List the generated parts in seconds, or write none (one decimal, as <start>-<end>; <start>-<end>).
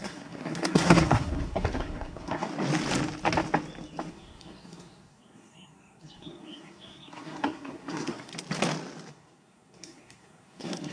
0.0-2.5; 4.1-8.3; 9.1-10.9